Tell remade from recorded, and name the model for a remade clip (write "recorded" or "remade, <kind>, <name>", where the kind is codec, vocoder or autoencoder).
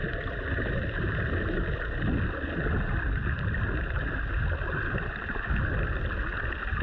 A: recorded